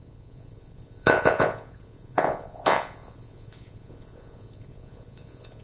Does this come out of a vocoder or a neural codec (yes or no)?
yes